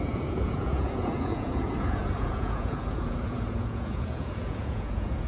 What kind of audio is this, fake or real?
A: fake